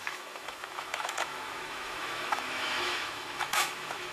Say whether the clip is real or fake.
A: fake